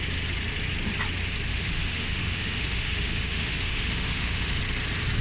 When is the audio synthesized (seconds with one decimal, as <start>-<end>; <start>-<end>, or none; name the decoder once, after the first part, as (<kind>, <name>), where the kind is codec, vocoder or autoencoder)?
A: 1.5-4.6 (autoencoder, DAC-VAE)